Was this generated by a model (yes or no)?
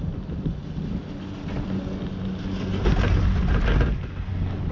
no